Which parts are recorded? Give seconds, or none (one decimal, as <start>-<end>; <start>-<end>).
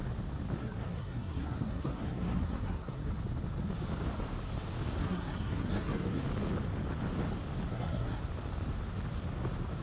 0.0-0.6; 3.1-5.0; 6.2-7.7; 8.2-9.8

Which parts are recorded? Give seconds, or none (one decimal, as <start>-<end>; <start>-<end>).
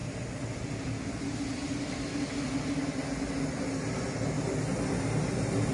0.0-5.7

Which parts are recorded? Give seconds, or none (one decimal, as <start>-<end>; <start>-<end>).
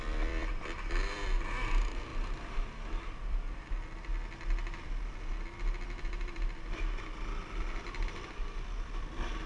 2.1-2.6; 4.1-6.0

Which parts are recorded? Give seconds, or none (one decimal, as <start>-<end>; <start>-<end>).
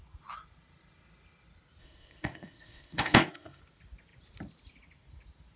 0.0-1.8; 3.6-5.6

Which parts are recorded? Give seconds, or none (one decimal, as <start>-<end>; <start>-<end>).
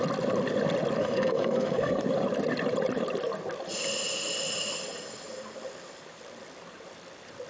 0.0-1.0; 2.0-7.5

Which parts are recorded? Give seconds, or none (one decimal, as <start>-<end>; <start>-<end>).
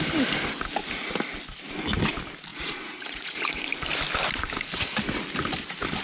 0.0-2.5; 3.6-6.0